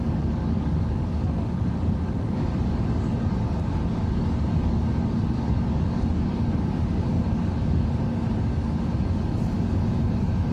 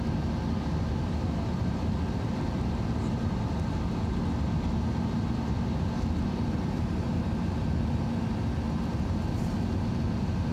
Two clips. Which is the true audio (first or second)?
second